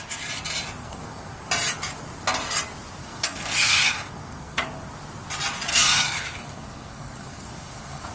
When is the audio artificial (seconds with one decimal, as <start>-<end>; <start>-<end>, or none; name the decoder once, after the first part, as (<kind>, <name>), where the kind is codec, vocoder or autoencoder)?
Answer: 0.8-1.4 (codec, SNAC); 3.0-4.7; 5.7-8.1